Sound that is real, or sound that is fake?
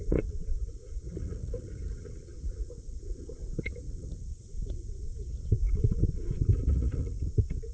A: fake